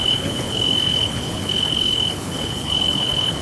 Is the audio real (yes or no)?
no